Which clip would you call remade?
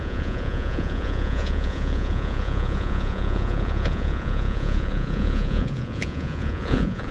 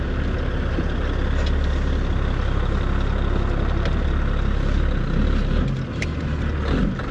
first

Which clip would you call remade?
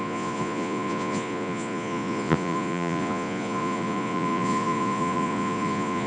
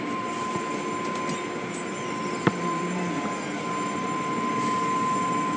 first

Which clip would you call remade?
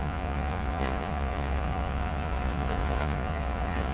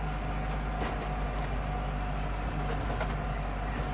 first